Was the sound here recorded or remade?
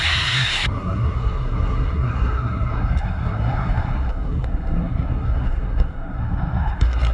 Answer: remade